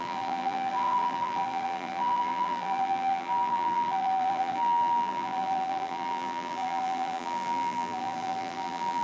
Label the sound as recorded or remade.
remade